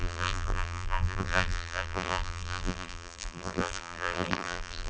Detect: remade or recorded remade